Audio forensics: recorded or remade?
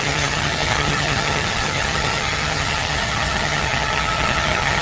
remade